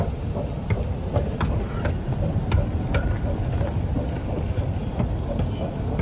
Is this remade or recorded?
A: recorded